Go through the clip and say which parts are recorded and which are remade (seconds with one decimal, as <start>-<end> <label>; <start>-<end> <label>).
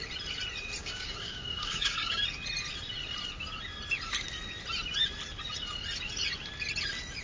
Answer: 0.0-0.8 recorded; 0.8-2.2 remade; 2.2-7.2 recorded